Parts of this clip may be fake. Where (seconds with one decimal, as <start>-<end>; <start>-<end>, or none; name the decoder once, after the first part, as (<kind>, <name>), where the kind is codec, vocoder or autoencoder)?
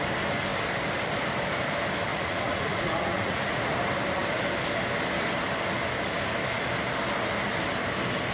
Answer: 2.1-3.7 (vocoder, Vocos)